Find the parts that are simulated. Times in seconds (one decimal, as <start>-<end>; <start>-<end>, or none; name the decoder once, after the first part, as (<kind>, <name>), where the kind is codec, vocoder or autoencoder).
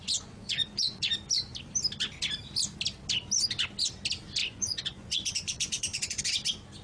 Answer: 0.0-1.1 (vocoder, Vocos); 4.4-6.2